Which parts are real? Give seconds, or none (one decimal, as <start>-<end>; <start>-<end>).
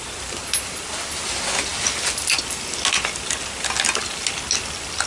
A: 0.0-5.1